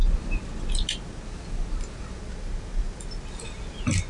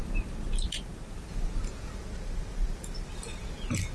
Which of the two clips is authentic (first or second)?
first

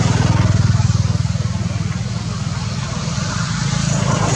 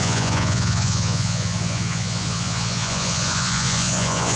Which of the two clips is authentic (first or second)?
first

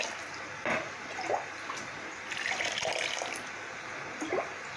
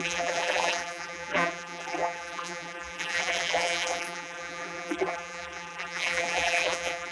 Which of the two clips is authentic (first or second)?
first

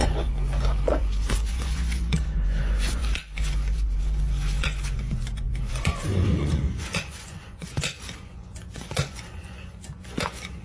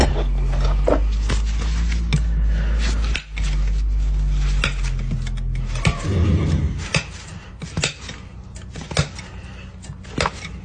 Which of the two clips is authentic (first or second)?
second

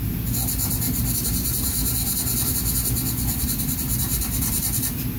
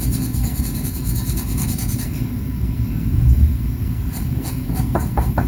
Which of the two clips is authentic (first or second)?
first